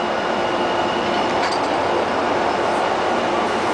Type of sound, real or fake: real